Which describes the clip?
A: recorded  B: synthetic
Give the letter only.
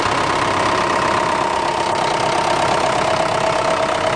A